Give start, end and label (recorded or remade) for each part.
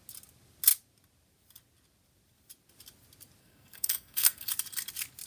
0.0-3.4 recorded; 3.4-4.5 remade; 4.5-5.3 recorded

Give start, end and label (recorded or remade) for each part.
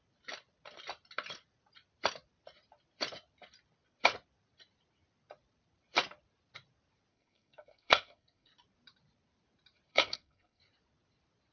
0.0-7.1 recorded; 7.1-8.5 remade; 8.5-9.9 recorded; 9.9-10.6 remade; 10.6-11.5 recorded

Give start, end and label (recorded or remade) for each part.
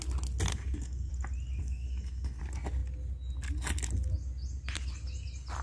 0.0-0.5 recorded; 0.5-1.1 remade; 1.1-1.6 recorded; 1.6-2.4 remade; 2.4-5.6 recorded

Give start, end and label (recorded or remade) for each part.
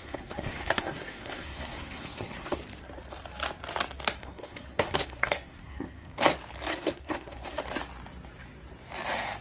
0.0-2.6 remade; 2.6-4.2 recorded; 4.2-6.1 remade; 6.1-6.7 recorded; 6.7-7.6 remade; 7.6-9.4 recorded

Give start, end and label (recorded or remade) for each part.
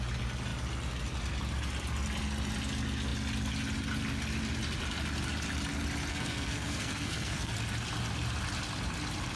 0.0-6.1 recorded; 6.1-7.5 remade; 7.5-9.3 recorded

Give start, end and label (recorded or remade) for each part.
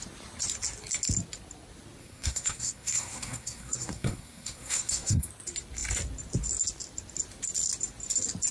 0.0-2.0 recorded; 2.0-5.3 remade; 5.3-8.5 recorded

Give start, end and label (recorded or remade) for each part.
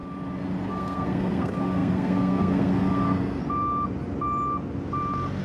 0.0-0.7 recorded; 0.7-3.4 remade; 3.4-5.4 recorded